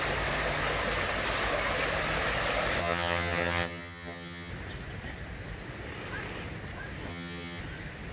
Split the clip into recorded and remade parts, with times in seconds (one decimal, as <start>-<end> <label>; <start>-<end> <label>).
0.0-2.8 recorded; 2.8-4.5 remade; 4.5-7.1 recorded; 7.1-7.6 remade; 7.6-8.1 recorded